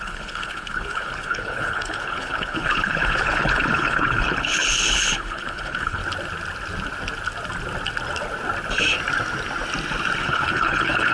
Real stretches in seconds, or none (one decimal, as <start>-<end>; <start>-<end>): 6.0-10.2